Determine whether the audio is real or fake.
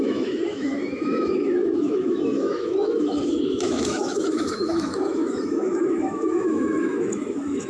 fake